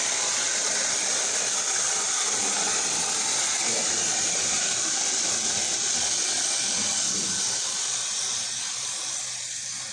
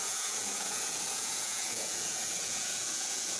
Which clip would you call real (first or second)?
first